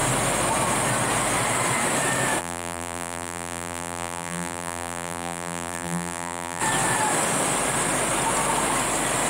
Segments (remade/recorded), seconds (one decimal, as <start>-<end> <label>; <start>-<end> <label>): 0.0-2.4 recorded; 2.4-6.6 remade; 6.6-9.3 recorded